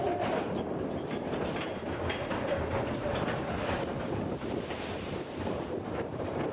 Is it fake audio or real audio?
real